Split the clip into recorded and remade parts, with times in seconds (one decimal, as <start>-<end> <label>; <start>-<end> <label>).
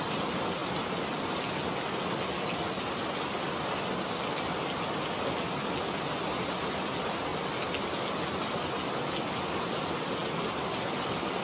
0.0-11.4 recorded